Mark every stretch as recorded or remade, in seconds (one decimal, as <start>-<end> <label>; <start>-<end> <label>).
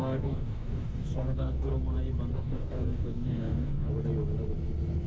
0.0-1.7 remade; 1.7-2.3 recorded; 2.3-3.9 remade; 3.9-5.1 recorded